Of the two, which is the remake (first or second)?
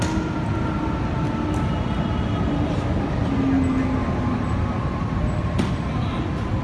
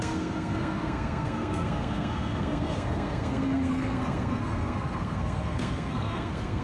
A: second